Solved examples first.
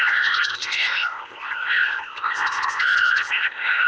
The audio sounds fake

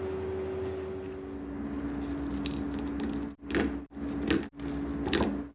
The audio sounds real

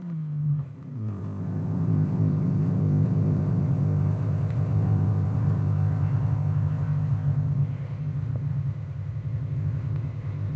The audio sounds fake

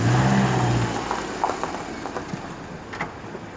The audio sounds real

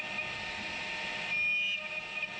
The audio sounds real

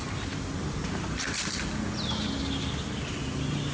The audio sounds real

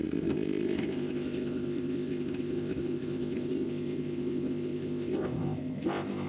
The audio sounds fake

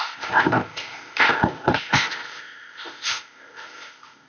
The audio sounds fake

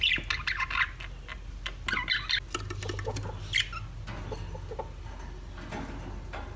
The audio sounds real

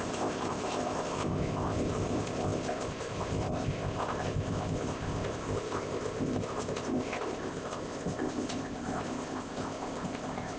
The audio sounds fake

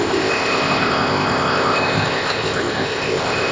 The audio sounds fake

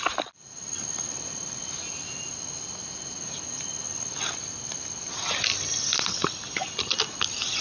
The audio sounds real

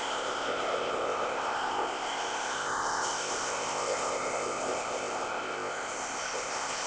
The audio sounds fake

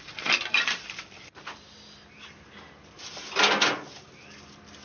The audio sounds real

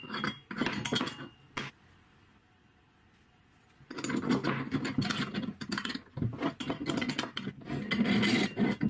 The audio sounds real